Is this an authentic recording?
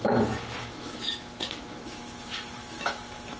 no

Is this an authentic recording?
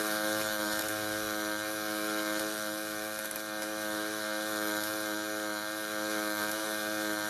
no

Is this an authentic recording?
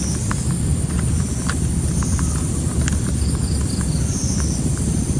yes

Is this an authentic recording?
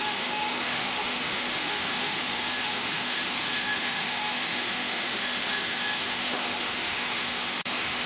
no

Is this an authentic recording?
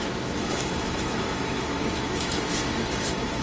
no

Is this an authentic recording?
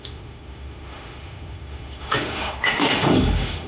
no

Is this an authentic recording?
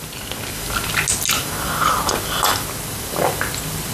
yes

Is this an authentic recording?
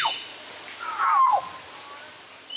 yes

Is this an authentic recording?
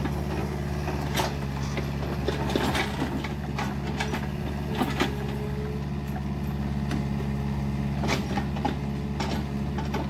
yes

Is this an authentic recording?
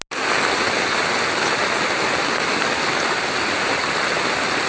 yes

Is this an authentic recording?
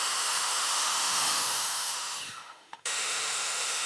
no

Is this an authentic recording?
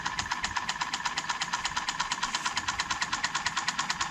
yes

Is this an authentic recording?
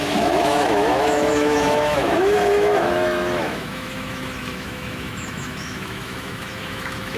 no